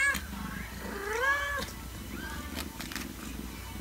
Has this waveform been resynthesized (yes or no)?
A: no